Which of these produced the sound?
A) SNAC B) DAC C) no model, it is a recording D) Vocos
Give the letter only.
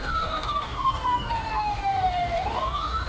B